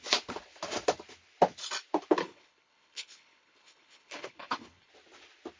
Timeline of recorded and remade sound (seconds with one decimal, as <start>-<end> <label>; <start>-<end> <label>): 0.0-2.2 recorded; 2.2-4.9 remade; 4.9-5.6 recorded

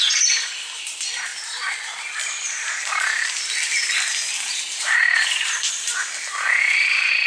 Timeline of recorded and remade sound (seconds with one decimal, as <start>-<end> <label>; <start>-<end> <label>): 0.0-7.3 recorded

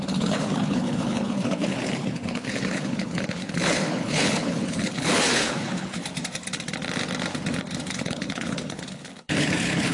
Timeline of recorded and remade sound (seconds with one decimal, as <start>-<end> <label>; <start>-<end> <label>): 0.0-6.0 remade; 6.0-7.9 recorded; 7.9-9.9 remade

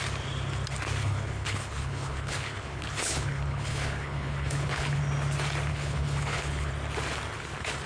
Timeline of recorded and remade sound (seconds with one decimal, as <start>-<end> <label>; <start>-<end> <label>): 0.0-1.0 recorded; 1.0-5.0 remade; 5.0-5.7 recorded; 5.7-6.7 remade; 6.7-7.9 recorded

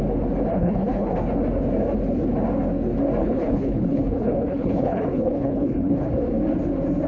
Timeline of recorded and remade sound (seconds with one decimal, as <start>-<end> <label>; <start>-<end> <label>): 0.0-0.5 recorded; 0.5-1.1 remade; 1.1-3.2 recorded; 3.2-6.1 remade; 6.1-7.1 recorded

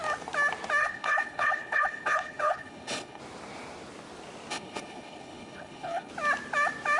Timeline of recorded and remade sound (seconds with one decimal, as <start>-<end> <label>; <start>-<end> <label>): 0.0-0.8 recorded; 0.8-3.2 remade; 3.2-4.5 recorded; 4.5-6.1 remade; 6.1-7.0 recorded

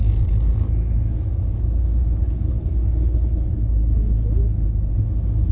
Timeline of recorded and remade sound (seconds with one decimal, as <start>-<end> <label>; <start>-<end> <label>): 0.0-2.0 recorded; 2.0-4.9 remade; 4.9-5.5 recorded

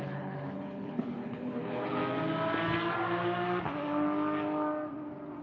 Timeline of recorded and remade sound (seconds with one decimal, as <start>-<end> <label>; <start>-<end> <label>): 0.0-2.0 remade; 2.0-5.4 recorded